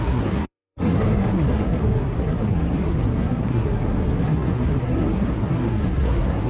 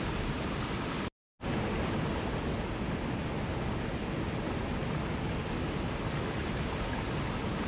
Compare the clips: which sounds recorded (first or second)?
second